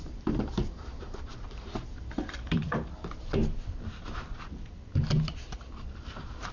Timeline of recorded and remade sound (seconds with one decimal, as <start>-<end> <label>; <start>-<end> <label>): 0.0-3.4 remade; 3.4-5.6 recorded; 5.6-6.5 remade